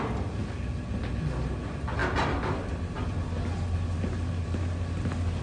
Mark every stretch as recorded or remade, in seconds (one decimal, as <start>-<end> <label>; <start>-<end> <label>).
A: 0.0-5.4 recorded